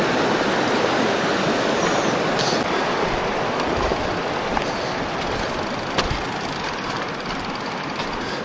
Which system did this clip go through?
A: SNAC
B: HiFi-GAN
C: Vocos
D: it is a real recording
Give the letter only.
D